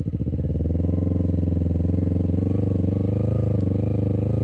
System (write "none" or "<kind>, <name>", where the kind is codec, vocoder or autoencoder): none